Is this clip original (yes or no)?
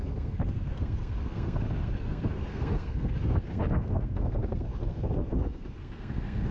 no